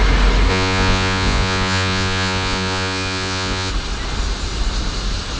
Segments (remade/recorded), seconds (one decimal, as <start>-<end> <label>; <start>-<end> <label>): 0.0-0.5 recorded; 0.5-3.7 remade; 3.7-5.4 recorded